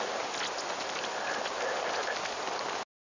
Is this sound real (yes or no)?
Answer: yes